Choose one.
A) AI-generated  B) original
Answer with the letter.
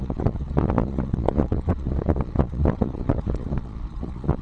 A